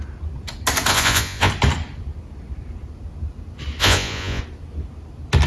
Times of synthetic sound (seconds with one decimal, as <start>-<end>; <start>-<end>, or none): 0.9-1.5; 3.8-4.4